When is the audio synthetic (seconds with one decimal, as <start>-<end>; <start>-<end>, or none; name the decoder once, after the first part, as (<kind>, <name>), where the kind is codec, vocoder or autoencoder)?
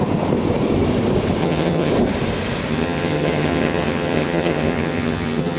1.4-1.9 (vocoder, HiFi-GAN); 2.7-5.6